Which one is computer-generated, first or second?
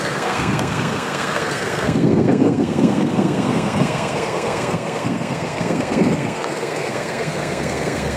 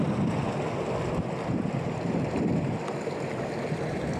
first